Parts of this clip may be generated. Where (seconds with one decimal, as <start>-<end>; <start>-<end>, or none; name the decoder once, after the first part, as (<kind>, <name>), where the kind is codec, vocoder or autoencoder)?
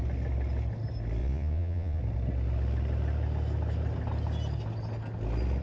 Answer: 1.2-2.0 (vocoder, Vocos)